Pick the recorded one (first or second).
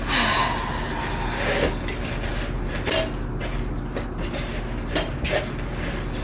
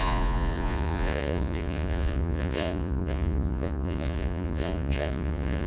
first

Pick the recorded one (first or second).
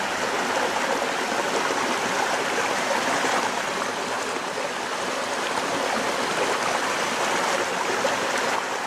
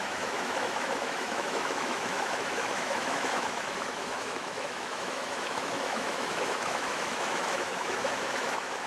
first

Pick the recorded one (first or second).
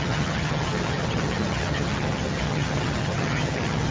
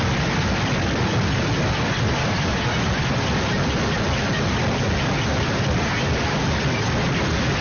second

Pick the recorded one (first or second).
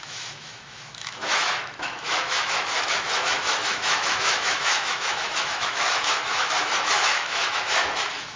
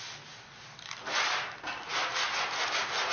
second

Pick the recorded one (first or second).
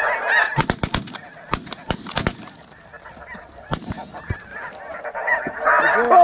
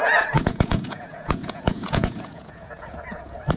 first